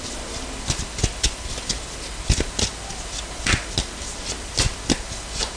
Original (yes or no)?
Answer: yes